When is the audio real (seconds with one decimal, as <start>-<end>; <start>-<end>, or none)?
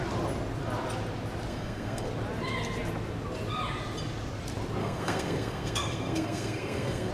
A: 0.0-1.5; 2.1-4.8